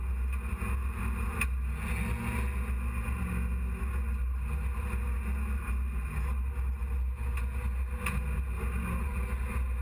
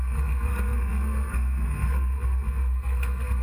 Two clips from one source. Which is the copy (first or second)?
second